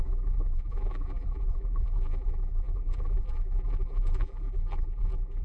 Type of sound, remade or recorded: remade